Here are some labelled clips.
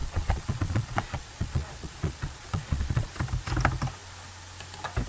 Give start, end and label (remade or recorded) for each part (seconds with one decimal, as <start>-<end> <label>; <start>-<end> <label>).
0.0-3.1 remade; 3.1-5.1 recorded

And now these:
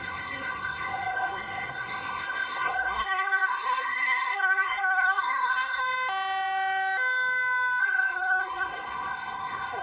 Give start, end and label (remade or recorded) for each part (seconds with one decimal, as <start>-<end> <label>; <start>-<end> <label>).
0.0-5.8 remade; 5.8-7.8 recorded; 7.8-9.8 remade

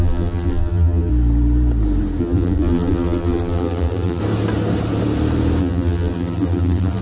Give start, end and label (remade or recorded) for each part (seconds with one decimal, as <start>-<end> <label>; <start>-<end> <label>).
0.0-1.1 remade; 1.1-2.2 recorded; 2.2-4.2 remade; 4.2-5.6 recorded; 5.6-7.0 remade

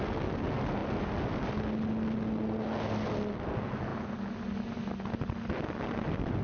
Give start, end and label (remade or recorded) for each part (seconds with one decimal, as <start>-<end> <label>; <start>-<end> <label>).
0.0-6.4 recorded

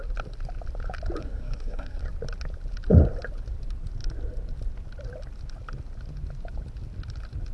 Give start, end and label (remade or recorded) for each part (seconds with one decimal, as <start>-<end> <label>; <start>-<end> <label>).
0.0-1.2 recorded; 1.2-2.0 remade; 2.0-7.5 recorded

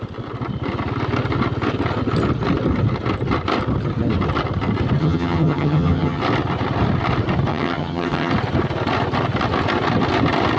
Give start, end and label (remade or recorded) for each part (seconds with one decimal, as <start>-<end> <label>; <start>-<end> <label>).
0.0-5.0 recorded; 5.0-6.2 remade; 6.2-7.5 recorded; 7.5-8.3 remade; 8.3-10.6 recorded

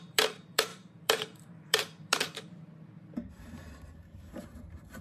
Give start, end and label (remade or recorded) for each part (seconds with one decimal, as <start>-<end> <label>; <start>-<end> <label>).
0.0-5.0 remade

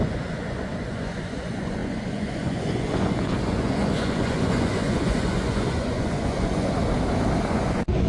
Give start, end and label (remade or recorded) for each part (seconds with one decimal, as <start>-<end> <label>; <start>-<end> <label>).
0.0-6.8 remade; 6.8-7.5 recorded; 7.5-8.1 remade